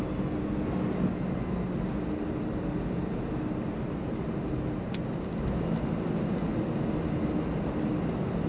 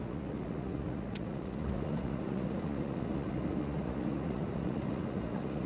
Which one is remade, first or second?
second